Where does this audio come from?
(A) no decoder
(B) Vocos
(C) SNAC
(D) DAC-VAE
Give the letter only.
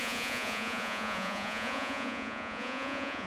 B